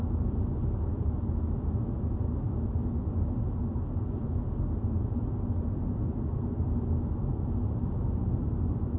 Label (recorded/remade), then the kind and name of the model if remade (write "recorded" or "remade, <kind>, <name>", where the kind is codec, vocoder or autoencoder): recorded